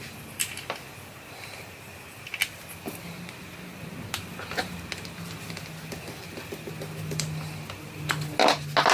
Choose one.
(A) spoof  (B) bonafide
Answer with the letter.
B